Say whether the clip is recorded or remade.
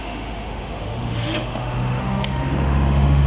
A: remade